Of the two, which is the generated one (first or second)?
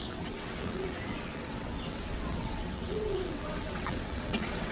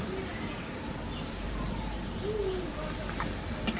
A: first